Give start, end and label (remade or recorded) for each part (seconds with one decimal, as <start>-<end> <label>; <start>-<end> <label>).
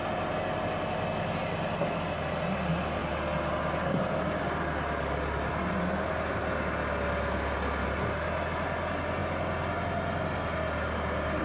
0.0-11.4 recorded